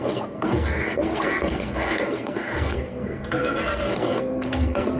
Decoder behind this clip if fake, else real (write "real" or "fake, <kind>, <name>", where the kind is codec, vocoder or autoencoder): fake, codec, SNAC